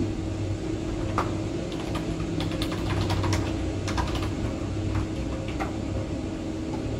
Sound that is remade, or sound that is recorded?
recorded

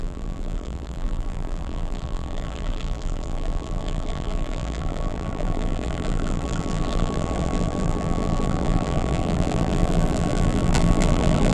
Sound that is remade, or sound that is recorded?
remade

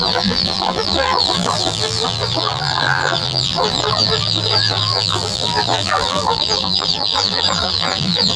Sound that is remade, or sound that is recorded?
remade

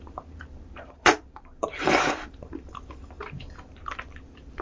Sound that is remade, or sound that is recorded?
remade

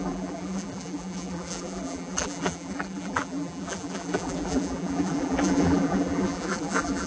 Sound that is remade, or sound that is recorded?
remade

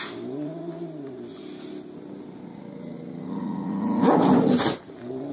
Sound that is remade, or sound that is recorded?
recorded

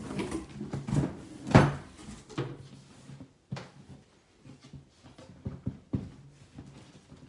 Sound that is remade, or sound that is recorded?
recorded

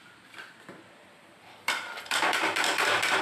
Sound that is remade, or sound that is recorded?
remade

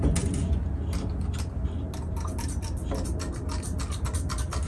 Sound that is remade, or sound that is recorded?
recorded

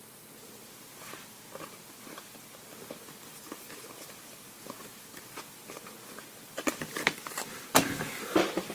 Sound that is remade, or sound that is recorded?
remade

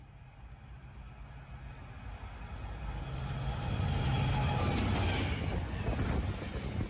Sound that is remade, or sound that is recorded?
recorded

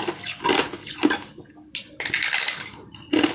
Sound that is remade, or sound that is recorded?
recorded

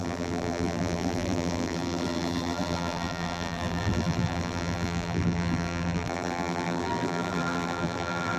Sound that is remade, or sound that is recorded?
remade